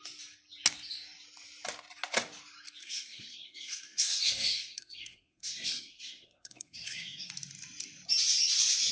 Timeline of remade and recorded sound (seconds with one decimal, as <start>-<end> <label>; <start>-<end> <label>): 0.0-2.8 recorded; 2.8-7.3 remade; 7.3-8.9 recorded